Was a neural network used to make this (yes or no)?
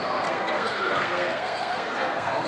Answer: yes